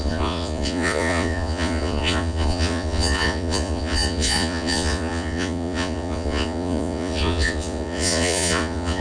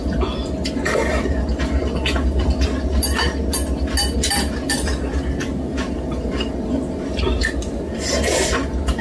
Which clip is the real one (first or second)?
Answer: second